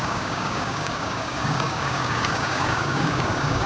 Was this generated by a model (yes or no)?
yes